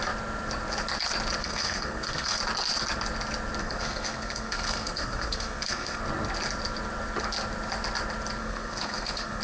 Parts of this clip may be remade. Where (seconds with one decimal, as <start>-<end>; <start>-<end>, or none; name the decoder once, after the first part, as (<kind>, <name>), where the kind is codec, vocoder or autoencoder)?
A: 1.4-2.4 (codec, SNAC); 3.6-6.0; 8.4-9.4